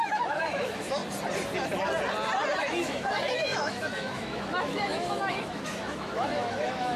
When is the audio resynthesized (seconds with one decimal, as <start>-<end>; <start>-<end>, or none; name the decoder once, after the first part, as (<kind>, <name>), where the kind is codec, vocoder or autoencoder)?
0.0-1.0 (autoencoder, DAC-VAE); 2.6-7.0